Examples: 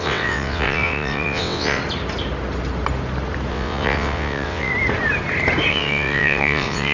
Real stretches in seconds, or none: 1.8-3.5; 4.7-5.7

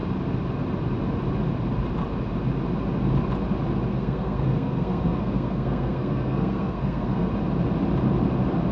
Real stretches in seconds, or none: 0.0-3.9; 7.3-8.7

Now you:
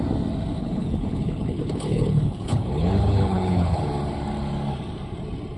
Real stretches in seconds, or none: 0.0-0.6; 3.8-5.6